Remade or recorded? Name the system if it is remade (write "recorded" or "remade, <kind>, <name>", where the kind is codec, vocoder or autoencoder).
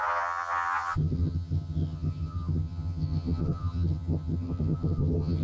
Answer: remade, vocoder, HiFi-GAN